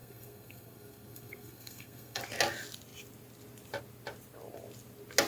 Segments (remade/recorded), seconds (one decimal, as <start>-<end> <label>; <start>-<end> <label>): 0.0-2.2 remade; 2.2-5.3 recorded